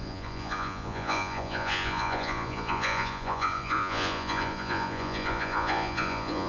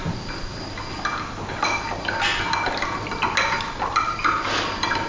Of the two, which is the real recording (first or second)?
second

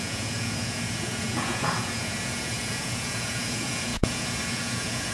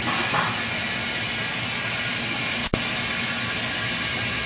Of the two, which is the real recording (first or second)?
second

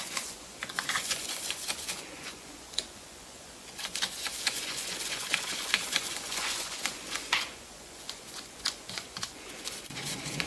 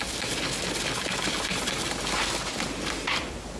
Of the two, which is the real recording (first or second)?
second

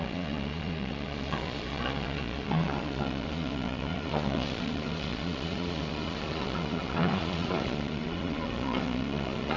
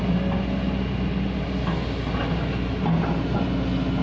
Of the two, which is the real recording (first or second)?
second